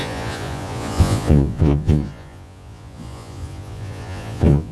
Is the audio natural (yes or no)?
no